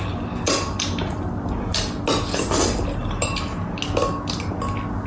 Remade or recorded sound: recorded